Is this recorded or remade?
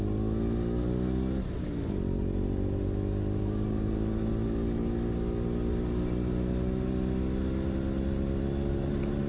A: recorded